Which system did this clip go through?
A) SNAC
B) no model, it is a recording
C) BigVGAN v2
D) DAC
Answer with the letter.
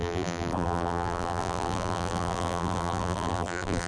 C